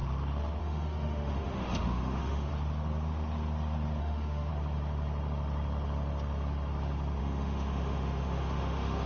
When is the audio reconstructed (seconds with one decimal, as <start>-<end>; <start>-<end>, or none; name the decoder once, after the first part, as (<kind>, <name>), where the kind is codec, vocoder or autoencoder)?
0.6-2.5 (autoencoder, DAC-VAE); 4.0-4.5; 7.2-9.1